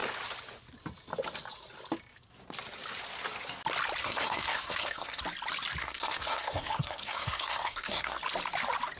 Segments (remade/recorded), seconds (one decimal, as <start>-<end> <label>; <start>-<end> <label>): 0.0-4.0 recorded; 4.0-5.2 remade; 5.2-5.8 recorded; 5.8-8.2 remade; 8.2-9.0 recorded